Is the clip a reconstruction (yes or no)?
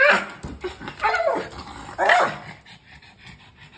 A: no